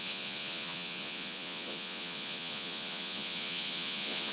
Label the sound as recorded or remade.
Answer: remade